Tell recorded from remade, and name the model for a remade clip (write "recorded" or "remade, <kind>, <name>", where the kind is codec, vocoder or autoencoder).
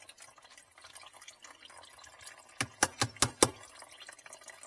recorded